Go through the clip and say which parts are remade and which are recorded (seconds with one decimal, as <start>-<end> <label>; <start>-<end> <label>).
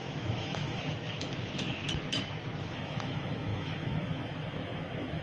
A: 0.0-1.8 remade; 1.8-2.6 recorded; 2.6-5.2 remade